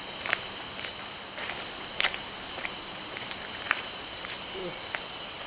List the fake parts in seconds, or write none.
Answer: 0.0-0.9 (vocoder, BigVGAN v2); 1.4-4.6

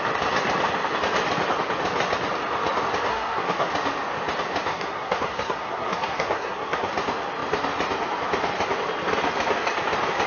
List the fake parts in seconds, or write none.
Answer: 3.1-3.7 (codec, SNAC); 4.7-6.9

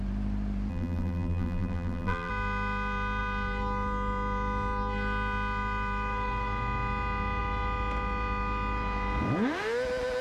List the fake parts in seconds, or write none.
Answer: 0.7-2.3 (vocoder, BigVGAN v2)

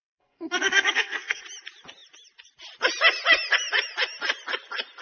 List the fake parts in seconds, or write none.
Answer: 0.0-1.4 (codec, SNAC)

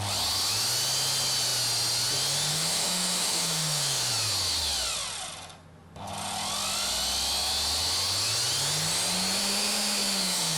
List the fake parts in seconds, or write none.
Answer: 2.5-4.1 (autoencoder, DAC-VAE); 9.4-10.6

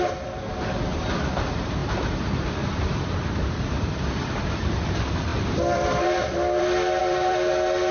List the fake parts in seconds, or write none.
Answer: 1.8-4.6 (vocoder, BigVGAN v2); 5.3-6.6; 7.0-7.5

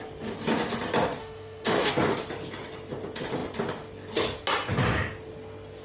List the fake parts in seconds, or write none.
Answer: 1.2-1.9 (autoencoder, DAC-VAE)

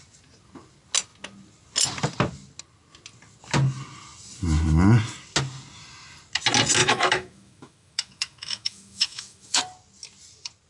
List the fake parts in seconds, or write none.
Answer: 6.8-9.6 (autoencoder, DAC-VAE)